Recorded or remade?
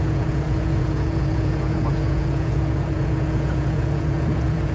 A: remade